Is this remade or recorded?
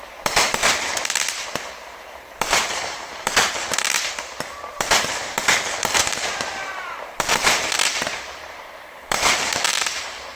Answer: remade